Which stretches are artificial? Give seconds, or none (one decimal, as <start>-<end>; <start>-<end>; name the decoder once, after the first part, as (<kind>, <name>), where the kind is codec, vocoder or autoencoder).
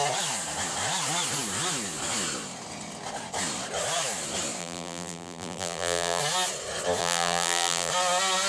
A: 4.6-6.2 (vocoder, BigVGAN v2); 7.0-7.9